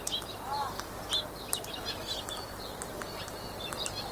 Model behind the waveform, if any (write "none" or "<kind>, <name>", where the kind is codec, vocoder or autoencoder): none